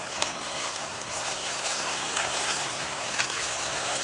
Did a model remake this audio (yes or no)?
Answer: yes